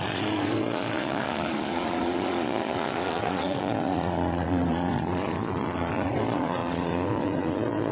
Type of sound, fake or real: fake